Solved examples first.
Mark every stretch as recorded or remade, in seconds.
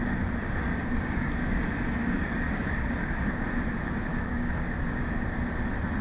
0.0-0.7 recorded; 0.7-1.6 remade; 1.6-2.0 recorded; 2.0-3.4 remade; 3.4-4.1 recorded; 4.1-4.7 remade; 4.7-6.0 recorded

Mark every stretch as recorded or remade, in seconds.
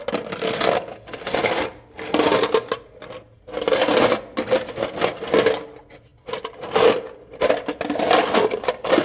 0.0-9.0 recorded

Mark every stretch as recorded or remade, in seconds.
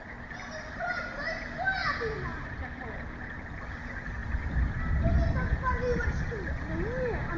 0.0-7.4 recorded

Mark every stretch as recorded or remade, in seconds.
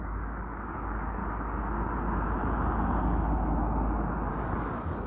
0.0-1.2 remade; 1.2-4.3 recorded; 4.3-5.1 remade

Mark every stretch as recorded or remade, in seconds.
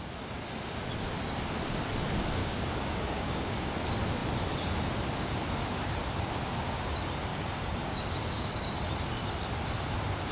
0.0-2.4 recorded; 2.4-3.7 remade; 3.7-7.3 recorded; 7.3-8.8 remade; 8.8-10.3 recorded